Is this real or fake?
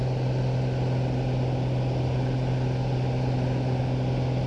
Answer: real